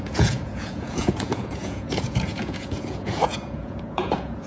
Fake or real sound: fake